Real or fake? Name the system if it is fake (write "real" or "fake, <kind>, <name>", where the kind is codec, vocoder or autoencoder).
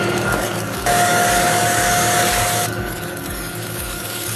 fake, codec, DAC